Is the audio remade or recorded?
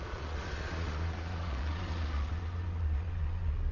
remade